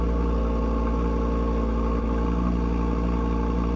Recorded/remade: recorded